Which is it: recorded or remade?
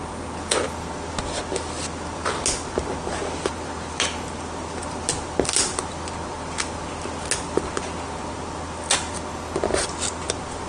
recorded